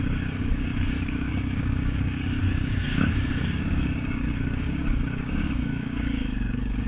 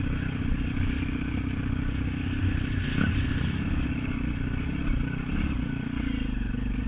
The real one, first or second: second